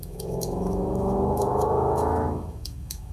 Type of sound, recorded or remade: remade